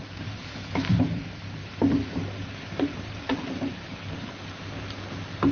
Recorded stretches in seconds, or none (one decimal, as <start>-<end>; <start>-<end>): 0.4-1.0; 3.9-5.5